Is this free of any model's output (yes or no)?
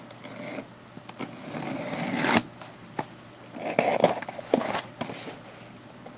yes